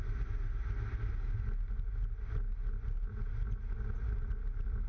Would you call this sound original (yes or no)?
yes